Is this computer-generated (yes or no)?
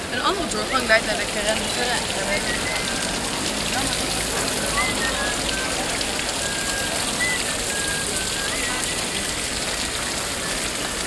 no